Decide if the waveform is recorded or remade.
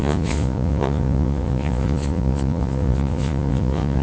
remade